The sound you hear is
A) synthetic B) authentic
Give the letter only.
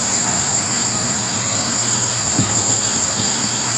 A